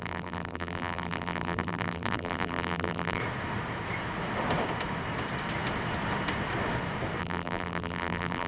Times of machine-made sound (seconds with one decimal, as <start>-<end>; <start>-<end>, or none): 0.0-3.2; 7.2-8.5